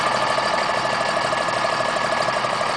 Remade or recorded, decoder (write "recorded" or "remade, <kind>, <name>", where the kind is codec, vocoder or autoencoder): recorded